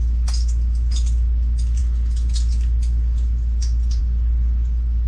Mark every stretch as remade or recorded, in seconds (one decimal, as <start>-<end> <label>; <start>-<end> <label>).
0.0-5.1 recorded